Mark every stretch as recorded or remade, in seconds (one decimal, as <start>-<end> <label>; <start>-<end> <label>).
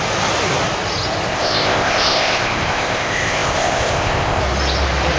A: 0.0-1.3 recorded; 1.3-4.4 remade; 4.4-5.2 recorded